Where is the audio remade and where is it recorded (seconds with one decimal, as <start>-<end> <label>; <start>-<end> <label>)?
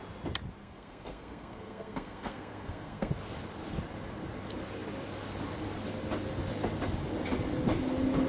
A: 0.0-0.6 recorded; 0.6-3.1 remade; 3.1-8.3 recorded